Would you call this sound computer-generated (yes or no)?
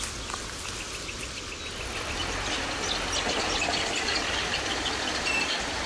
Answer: no